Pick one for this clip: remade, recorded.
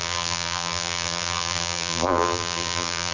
remade